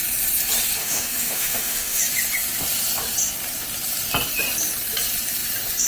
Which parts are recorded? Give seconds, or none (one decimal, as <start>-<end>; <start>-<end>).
0.0-0.8; 2.0-5.9